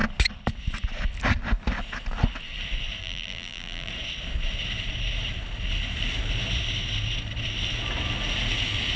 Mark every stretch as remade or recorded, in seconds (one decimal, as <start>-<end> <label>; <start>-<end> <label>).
0.0-3.0 recorded; 3.0-3.9 remade; 3.9-9.0 recorded